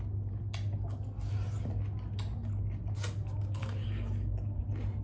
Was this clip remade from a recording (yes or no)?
no